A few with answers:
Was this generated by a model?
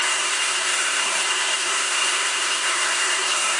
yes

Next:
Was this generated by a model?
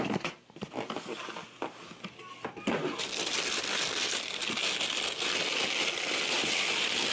no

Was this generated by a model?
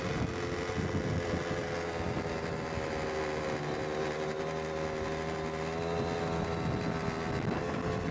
no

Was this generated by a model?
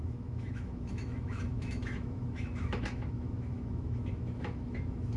yes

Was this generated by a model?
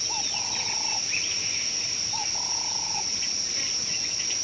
no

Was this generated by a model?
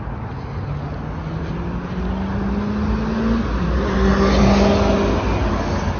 no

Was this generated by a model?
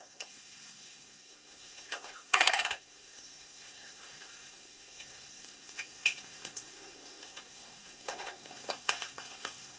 yes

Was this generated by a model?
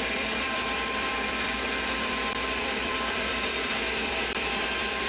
yes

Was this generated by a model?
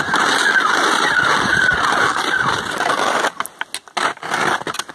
no